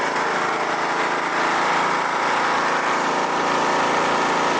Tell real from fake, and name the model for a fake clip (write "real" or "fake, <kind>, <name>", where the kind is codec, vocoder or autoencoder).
real